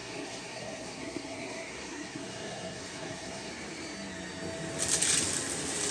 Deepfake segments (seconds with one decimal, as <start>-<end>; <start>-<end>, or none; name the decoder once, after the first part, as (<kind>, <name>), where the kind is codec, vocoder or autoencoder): 0.0-3.5 (codec, SNAC)